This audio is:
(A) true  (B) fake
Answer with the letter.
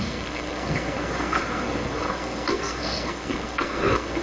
B